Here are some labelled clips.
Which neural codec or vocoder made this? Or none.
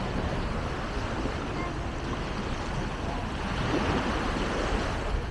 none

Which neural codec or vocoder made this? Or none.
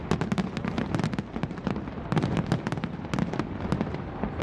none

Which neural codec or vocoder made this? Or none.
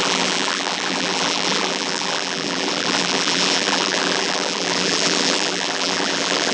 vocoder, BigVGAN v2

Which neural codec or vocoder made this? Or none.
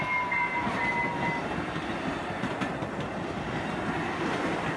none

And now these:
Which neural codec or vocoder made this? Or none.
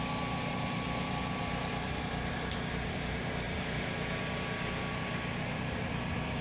vocoder, BigVGAN v2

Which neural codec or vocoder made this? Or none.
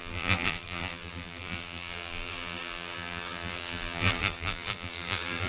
vocoder, BigVGAN v2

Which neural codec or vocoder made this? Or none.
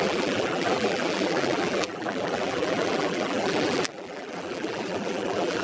vocoder, BigVGAN v2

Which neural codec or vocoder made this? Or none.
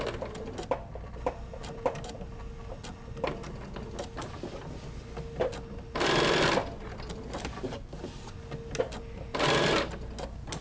none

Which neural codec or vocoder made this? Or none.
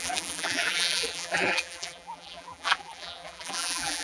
vocoder, BigVGAN v2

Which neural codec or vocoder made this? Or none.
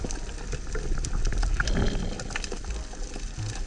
none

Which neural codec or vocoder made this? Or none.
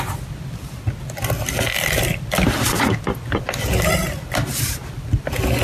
none